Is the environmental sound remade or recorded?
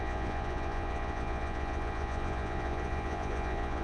remade